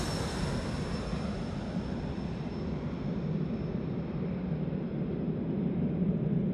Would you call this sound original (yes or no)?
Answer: yes